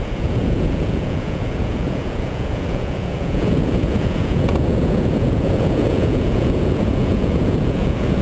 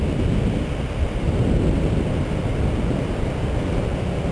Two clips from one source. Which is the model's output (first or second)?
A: first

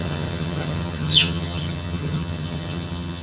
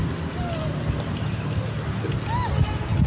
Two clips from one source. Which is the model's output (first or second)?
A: first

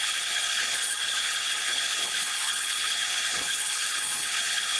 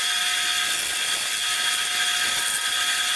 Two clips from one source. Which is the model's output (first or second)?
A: first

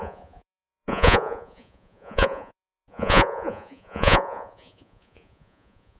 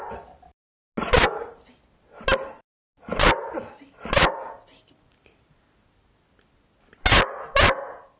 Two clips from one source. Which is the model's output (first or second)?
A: first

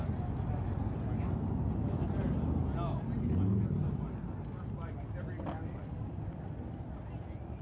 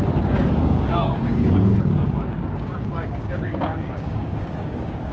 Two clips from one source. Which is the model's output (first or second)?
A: second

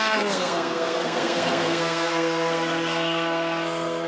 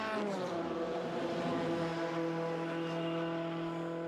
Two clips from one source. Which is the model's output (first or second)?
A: first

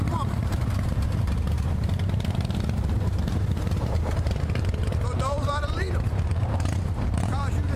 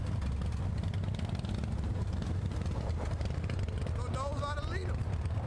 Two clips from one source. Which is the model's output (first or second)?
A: first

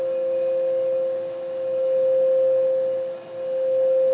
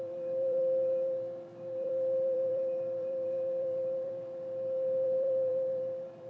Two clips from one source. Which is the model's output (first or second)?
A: second